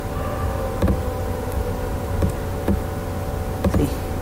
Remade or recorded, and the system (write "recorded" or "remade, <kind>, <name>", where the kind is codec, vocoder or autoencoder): recorded